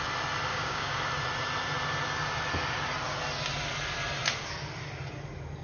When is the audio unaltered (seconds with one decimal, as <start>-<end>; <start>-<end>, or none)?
0.0-0.5; 1.0-5.6